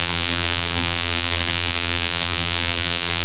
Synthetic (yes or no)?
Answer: yes